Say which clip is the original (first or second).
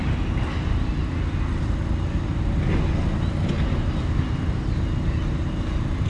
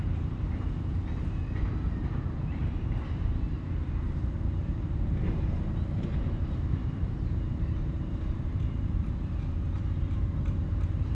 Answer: first